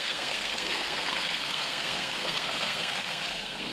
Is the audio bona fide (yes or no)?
no